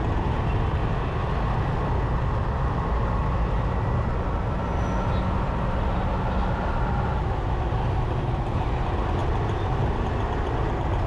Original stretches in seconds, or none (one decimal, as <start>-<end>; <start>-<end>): 0.0-11.1

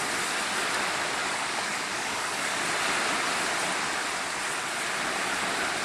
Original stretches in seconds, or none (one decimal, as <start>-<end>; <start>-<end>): 0.0-1.2; 2.6-5.8

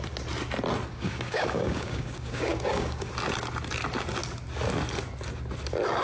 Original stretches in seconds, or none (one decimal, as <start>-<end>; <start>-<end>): 0.0-0.9; 3.1-6.0

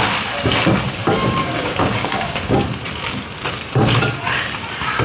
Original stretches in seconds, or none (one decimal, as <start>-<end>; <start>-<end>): 0.0-1.0; 2.5-5.0

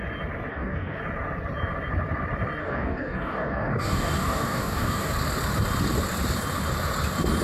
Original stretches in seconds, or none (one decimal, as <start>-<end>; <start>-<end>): 0.0-0.5; 1.0-2.6; 5.1-7.4

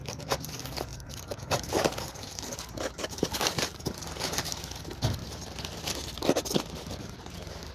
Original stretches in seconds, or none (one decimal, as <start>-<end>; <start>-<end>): 5.2-6.8

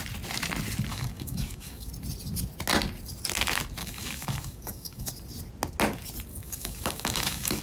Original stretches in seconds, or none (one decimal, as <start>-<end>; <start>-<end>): 0.0-0.9; 1.9-3.8; 5.1-6.3